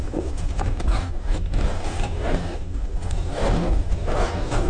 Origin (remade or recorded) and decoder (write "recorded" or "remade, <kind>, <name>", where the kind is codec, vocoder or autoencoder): remade, codec, DAC